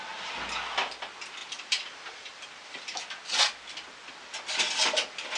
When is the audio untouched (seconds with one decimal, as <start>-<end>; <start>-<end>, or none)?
0.0-1.4; 3.0-5.4